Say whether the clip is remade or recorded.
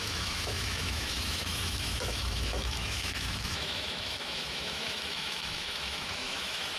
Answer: remade